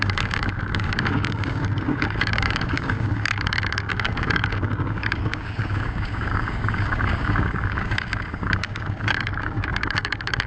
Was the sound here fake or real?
fake